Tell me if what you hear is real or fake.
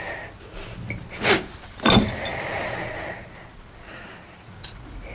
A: real